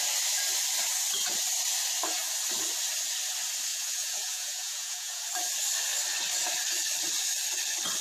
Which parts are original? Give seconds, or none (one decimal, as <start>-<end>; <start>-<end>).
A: 0.0-3.7; 5.2-8.0